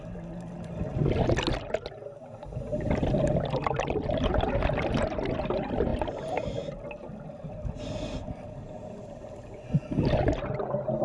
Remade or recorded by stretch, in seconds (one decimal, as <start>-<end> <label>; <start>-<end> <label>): 0.0-11.0 recorded